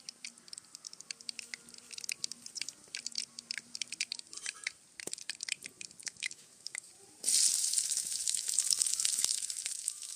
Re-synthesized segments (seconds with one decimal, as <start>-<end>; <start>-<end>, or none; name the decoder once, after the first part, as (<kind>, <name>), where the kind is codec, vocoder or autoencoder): 6.0-6.9 (autoencoder, DAC-VAE); 7.6-10.2